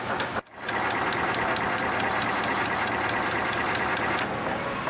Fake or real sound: real